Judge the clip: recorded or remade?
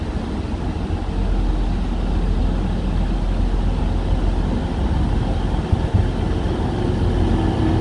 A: recorded